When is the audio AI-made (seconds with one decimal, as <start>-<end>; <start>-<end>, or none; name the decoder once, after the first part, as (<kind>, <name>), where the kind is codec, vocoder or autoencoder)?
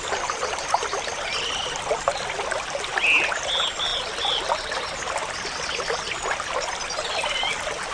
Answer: none